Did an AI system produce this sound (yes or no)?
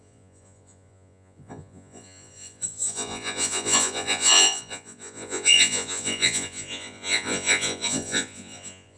yes